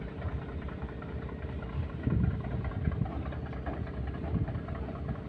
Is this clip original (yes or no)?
no